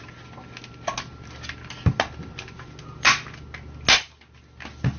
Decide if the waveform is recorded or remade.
recorded